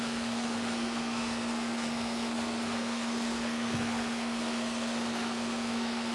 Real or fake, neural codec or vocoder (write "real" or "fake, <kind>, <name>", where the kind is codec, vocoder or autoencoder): fake, codec, SNAC